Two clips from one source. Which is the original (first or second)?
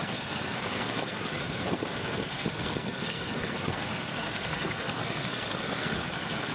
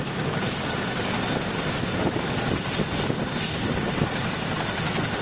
second